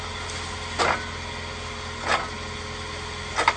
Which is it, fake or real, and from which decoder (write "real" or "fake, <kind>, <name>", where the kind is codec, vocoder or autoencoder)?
real